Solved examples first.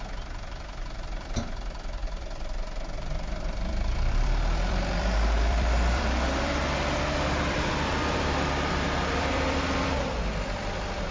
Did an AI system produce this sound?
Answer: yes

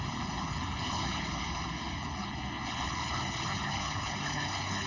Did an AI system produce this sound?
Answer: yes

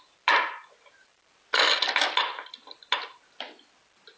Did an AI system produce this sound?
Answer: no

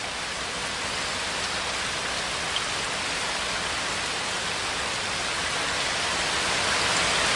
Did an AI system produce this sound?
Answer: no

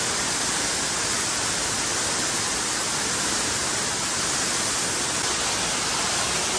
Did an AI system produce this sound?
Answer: no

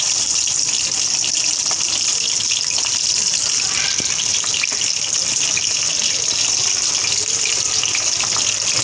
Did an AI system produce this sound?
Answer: no